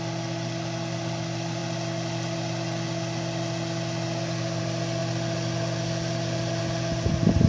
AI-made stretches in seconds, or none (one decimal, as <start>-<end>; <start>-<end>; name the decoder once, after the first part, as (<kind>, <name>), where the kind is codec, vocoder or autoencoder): none